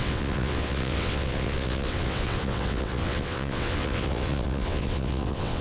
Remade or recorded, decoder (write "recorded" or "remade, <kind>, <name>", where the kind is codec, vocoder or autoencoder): remade, vocoder, WaveNeXt